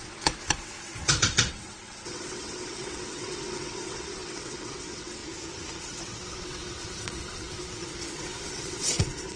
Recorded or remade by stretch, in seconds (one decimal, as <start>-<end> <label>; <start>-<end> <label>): 0.0-5.2 remade; 5.2-5.8 recorded; 5.8-9.4 remade